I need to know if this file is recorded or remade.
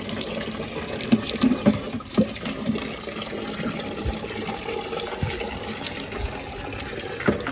recorded